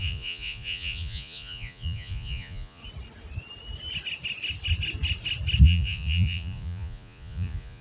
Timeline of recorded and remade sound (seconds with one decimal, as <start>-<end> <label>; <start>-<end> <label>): 0.0-2.8 remade; 2.8-5.6 recorded; 5.6-7.8 remade